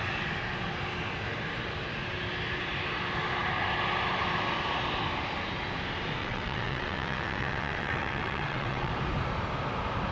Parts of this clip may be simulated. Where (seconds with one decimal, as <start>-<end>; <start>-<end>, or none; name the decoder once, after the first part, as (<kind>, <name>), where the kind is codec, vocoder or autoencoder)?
6.2-8.9 (vocoder, WaveNeXt)